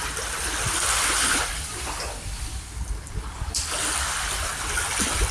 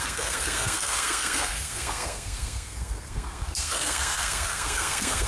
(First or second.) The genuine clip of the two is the first